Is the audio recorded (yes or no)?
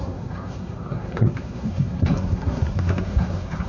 no